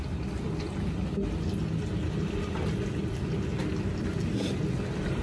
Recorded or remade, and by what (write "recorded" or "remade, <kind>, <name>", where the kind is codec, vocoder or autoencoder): recorded